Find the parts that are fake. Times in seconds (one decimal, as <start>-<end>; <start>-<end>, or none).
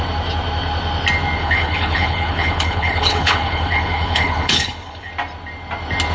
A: 1.4-5.1